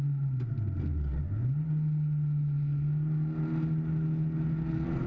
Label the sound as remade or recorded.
recorded